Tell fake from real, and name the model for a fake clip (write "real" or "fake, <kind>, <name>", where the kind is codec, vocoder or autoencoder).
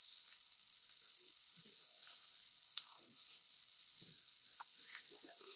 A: fake, codec, SNAC